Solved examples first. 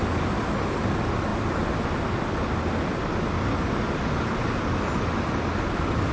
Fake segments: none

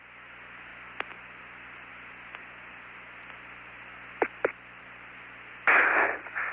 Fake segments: none

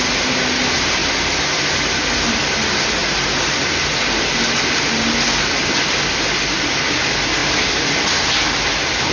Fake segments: none

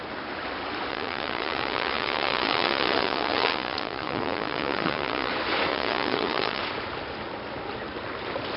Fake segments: 0.9-5.3 (vocoder, Vocos); 5.7-6.6